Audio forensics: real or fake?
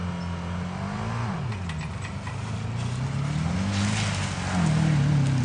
real